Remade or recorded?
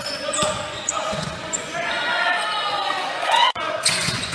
remade